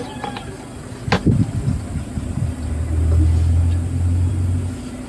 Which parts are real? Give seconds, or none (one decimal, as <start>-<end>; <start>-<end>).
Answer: 0.0-5.1